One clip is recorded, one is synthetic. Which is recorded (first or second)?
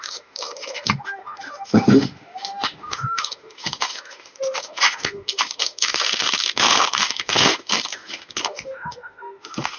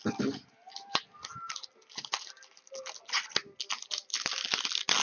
second